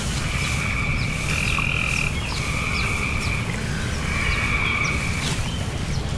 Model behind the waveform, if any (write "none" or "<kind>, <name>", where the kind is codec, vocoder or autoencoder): none